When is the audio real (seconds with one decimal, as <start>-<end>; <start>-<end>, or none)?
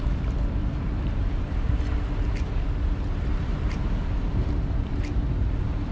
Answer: 0.0-0.6; 1.5-3.3